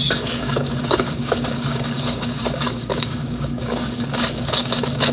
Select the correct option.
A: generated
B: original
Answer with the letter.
A